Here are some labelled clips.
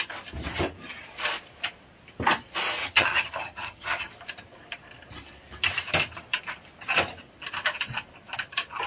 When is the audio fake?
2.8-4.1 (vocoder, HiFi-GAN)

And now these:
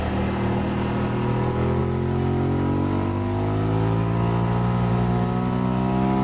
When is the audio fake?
none

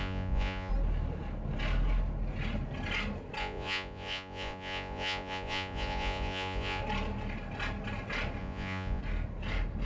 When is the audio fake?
0.0-0.7 (vocoder, Vocos); 3.4-6.8; 8.4-9.0

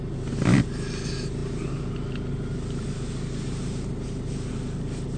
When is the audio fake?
none

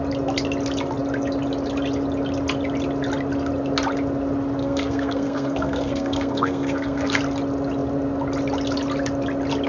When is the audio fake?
4.6-7.2 (codec, SNAC)

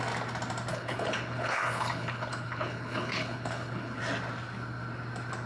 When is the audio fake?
0.7-4.0 (codec, HILCodec)